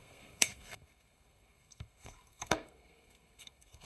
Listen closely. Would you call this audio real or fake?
fake